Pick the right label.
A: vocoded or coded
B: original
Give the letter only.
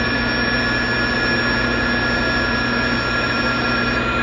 B